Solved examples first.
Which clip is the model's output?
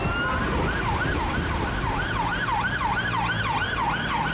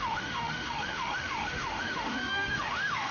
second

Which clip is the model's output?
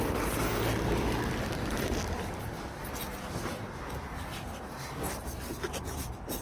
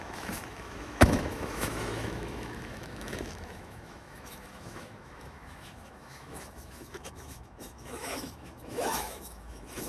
second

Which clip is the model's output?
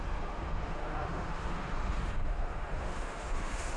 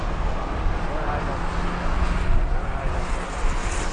first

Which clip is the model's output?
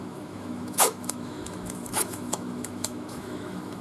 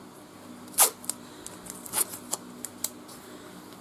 first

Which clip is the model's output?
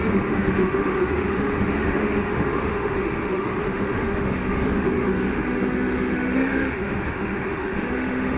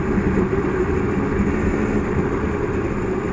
first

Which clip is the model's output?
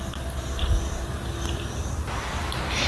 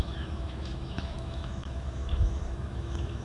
second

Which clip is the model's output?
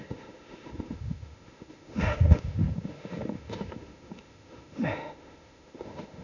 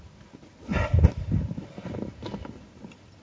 first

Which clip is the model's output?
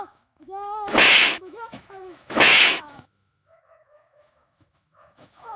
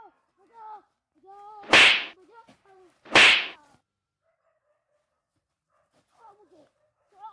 first